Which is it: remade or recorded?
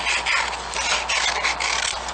recorded